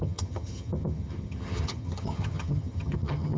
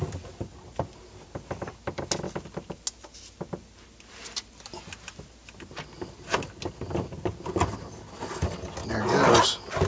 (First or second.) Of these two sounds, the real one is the second